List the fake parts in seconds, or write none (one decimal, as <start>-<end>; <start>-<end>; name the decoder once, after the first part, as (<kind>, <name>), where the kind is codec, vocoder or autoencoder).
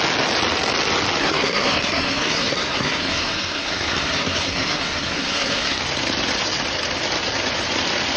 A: 1.2-5.8 (codec, SNAC)